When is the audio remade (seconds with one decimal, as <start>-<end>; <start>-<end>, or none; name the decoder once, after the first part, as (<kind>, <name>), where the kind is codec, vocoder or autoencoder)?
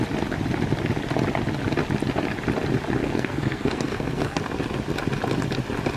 3.0-4.4 (codec, SNAC)